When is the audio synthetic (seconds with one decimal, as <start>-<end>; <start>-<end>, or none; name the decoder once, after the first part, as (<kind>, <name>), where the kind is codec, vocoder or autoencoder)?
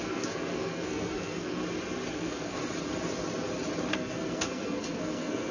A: 0.0-1.6 (codec, SNAC); 2.1-2.6; 3.9-5.5